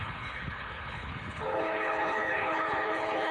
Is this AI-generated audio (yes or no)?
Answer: yes